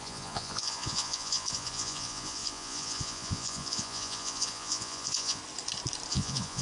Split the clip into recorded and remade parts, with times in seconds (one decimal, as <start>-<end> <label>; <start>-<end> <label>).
0.0-5.4 remade; 5.4-6.1 recorded; 6.1-6.6 remade

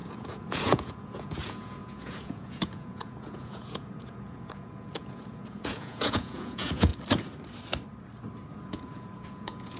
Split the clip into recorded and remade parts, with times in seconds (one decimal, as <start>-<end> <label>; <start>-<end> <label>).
0.0-6.9 remade; 6.9-8.5 recorded; 8.5-9.8 remade

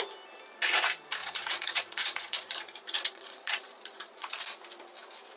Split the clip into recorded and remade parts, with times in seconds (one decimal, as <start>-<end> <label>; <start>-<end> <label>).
0.0-1.2 recorded; 1.2-4.4 remade; 4.4-5.4 recorded

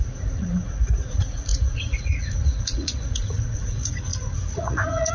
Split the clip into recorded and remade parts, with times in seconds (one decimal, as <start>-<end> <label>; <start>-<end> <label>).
0.0-5.1 remade

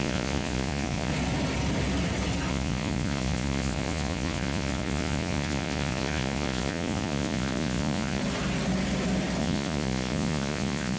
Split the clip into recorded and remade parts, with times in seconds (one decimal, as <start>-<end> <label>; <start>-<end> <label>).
0.0-1.1 remade; 1.1-2.5 recorded; 2.5-8.2 remade; 8.2-9.4 recorded; 9.4-11.0 remade

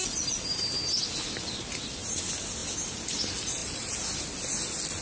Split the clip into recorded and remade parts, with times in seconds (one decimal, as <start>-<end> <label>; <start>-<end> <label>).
0.0-5.0 recorded

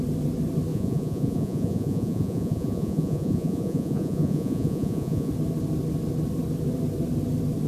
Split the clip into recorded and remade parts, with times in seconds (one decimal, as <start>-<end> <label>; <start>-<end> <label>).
0.0-0.7 recorded; 0.7-5.3 remade; 5.3-7.7 recorded